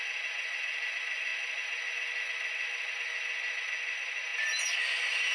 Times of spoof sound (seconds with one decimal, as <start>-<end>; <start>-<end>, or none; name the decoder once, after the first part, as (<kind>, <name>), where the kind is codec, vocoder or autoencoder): none